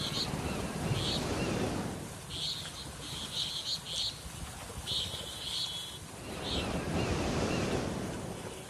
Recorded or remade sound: recorded